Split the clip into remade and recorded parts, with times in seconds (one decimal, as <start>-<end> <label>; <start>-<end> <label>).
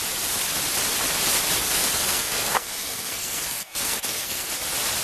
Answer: 0.0-1.6 recorded; 1.6-4.5 remade; 4.5-5.0 recorded